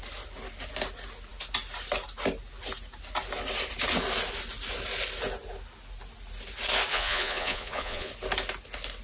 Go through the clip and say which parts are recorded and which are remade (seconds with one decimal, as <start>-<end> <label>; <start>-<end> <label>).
0.0-6.9 recorded; 6.9-8.1 remade; 8.1-9.0 recorded